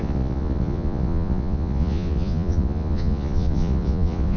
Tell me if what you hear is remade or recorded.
remade